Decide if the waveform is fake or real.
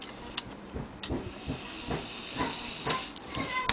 real